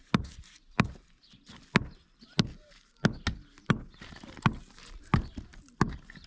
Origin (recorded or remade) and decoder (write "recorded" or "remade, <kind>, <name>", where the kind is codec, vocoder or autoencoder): recorded